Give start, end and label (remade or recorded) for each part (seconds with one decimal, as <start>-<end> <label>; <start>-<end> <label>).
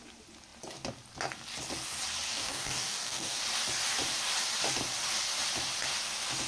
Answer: 0.0-2.3 recorded; 2.3-3.4 remade; 3.4-6.5 recorded